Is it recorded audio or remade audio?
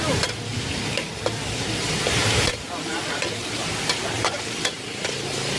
remade